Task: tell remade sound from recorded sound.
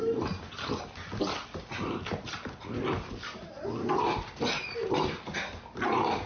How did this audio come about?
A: recorded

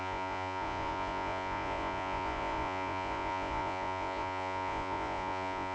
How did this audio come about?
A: remade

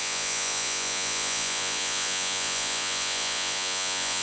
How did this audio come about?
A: remade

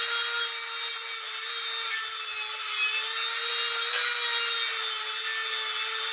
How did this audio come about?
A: recorded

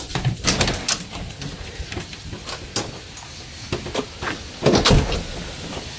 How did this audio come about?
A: recorded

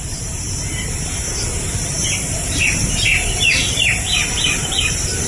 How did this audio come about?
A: remade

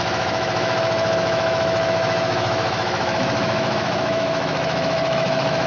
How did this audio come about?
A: remade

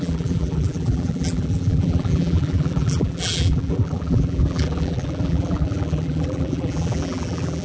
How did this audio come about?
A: remade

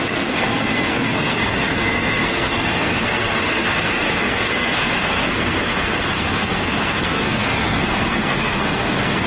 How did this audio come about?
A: remade